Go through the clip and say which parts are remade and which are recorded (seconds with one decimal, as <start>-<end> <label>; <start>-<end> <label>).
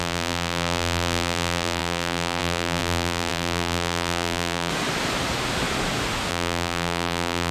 0.0-4.7 remade; 4.7-6.3 recorded; 6.3-7.5 remade